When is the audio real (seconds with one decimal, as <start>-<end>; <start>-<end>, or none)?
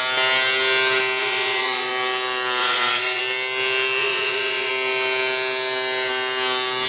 0.0-1.2; 1.9-2.6; 3.2-4.0; 4.7-6.9